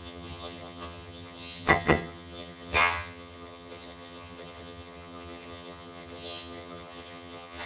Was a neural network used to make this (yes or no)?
yes